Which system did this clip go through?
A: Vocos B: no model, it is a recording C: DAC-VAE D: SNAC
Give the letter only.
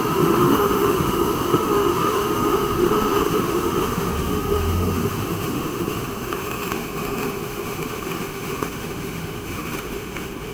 C